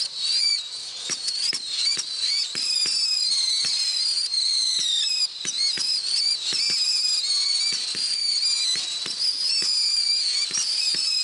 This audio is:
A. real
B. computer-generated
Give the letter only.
A